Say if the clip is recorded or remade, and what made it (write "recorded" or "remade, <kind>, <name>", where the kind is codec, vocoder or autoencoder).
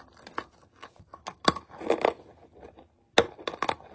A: recorded